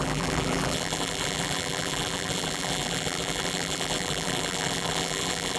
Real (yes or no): no